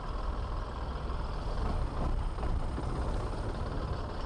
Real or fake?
real